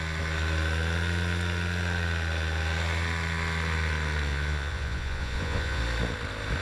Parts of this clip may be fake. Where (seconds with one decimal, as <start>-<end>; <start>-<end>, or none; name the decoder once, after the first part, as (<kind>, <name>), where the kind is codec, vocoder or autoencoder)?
4.3-5.8 (vocoder, Vocos)